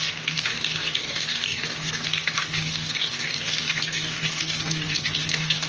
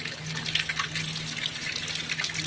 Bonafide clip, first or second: second